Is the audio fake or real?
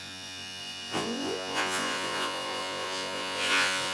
fake